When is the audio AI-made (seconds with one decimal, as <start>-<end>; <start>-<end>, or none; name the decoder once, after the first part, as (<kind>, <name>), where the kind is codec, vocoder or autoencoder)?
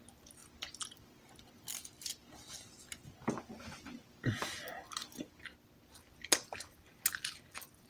none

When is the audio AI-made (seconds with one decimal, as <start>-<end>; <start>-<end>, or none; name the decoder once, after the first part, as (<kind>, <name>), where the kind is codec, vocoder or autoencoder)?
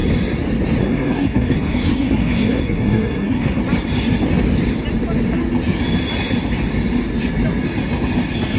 0.8-3.6 (codec, SNAC)